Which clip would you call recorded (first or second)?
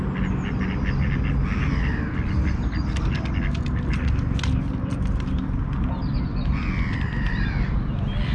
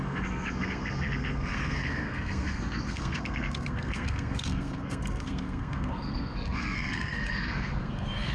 first